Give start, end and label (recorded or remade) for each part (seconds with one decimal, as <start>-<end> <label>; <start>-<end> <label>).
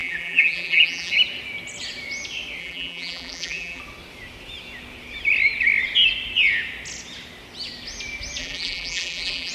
0.0-1.1 remade; 1.1-2.6 recorded; 2.6-3.8 remade; 3.8-8.4 recorded; 8.4-9.5 remade